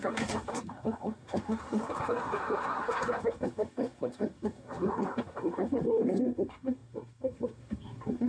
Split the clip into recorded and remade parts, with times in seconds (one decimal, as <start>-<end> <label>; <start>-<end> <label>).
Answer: 0.0-8.3 remade